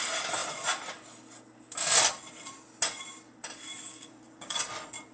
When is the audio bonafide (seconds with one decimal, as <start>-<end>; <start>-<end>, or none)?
0.0-3.9; 4.6-5.1